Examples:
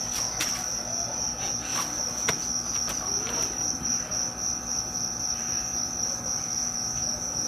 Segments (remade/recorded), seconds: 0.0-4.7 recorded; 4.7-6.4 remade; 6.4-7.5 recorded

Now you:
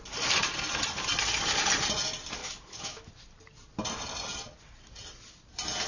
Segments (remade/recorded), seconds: 0.0-2.4 recorded; 2.4-3.1 remade; 3.1-5.9 recorded

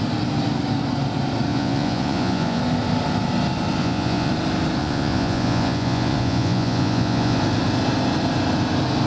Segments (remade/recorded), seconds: 0.0-1.5 recorded; 1.5-2.6 remade; 2.6-3.8 recorded; 3.8-4.3 remade; 4.3-4.8 recorded; 4.8-7.4 remade; 7.4-9.1 recorded

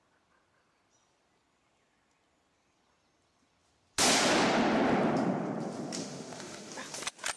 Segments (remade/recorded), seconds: 0.0-6.0 recorded; 6.0-6.7 remade; 6.7-7.4 recorded

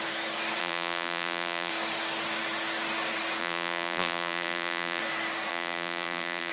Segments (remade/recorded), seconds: 0.0-0.6 recorded; 0.6-1.7 remade; 1.7-3.4 recorded; 3.4-5.0 remade; 5.0-5.5 recorded; 5.5-6.5 remade

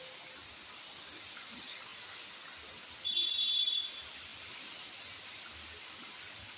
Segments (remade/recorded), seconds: 0.0-6.6 recorded

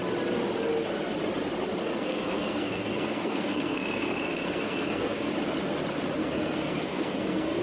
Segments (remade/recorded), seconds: 0.0-1.8 recorded; 1.8-5.3 remade; 5.3-6.2 recorded; 6.2-7.6 remade